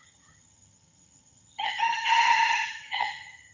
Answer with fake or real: fake